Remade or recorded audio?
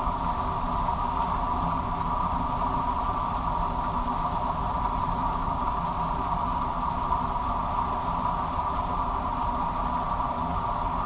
recorded